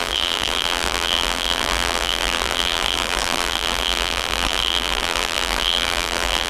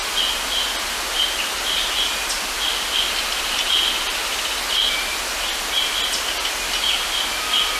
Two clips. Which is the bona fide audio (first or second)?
second